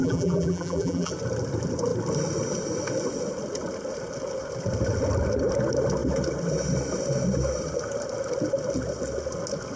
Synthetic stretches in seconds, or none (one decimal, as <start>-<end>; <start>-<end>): 0.0-1.1